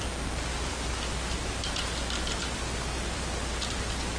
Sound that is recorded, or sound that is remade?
recorded